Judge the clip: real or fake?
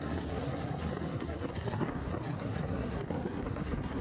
fake